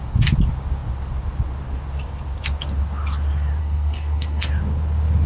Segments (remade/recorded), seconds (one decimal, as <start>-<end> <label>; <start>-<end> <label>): 0.0-3.6 recorded; 3.6-4.5 remade; 4.5-5.3 recorded